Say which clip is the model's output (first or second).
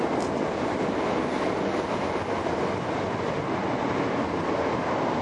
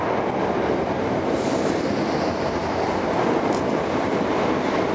second